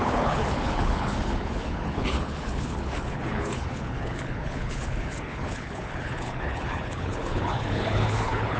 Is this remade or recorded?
remade